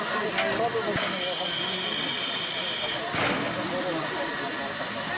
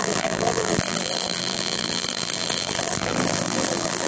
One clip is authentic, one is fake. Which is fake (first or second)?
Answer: second